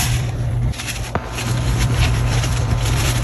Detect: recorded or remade remade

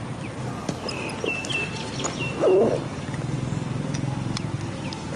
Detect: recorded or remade recorded